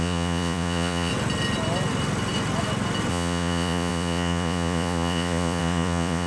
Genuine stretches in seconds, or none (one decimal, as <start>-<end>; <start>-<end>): 1.1-3.1